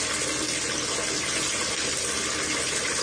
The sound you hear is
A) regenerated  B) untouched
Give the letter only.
B